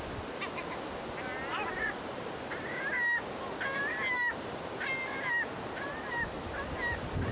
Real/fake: real